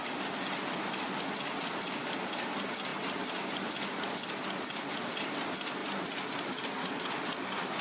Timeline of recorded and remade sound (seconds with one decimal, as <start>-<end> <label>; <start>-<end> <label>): 0.0-2.0 recorded; 2.0-2.9 remade; 2.9-5.2 recorded; 5.2-7.8 remade